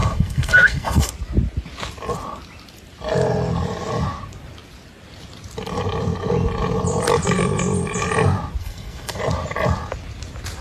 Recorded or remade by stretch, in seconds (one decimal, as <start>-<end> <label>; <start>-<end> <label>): 0.0-1.1 remade; 1.1-8.6 recorded; 8.6-9.2 remade; 9.2-10.6 recorded